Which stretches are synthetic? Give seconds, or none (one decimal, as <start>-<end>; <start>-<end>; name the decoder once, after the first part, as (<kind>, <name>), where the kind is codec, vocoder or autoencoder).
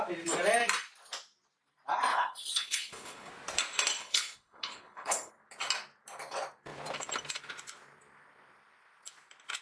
2.1-3.3 (codec, HILCodec); 4.0-5.3